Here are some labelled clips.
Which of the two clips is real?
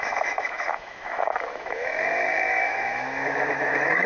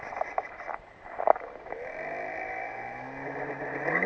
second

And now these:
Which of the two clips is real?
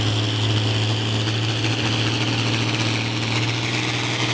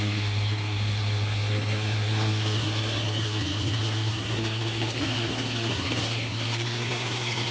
first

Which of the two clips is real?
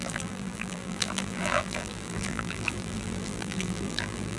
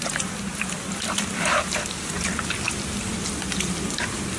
second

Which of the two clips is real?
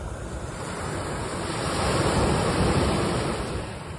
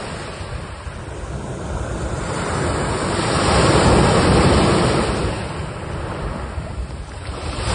second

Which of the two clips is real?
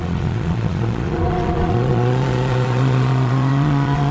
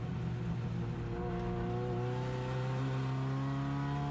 second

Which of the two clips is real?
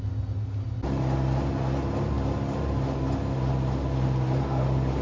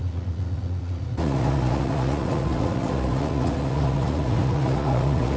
first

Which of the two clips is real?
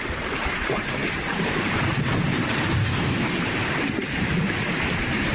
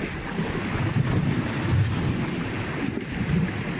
second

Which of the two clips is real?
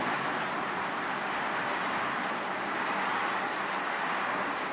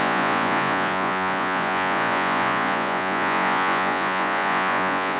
first